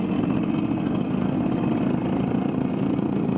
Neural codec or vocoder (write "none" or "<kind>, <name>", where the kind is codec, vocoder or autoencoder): none